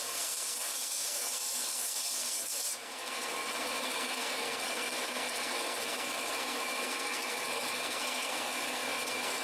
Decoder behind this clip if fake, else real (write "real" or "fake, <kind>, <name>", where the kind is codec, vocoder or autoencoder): fake, codec, SNAC